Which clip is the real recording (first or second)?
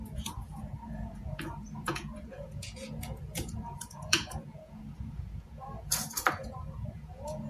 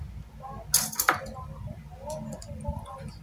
second